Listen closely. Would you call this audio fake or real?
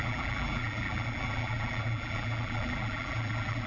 fake